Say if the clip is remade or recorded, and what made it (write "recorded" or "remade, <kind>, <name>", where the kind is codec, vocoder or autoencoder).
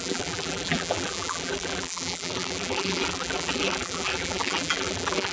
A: remade, vocoder, BigVGAN v2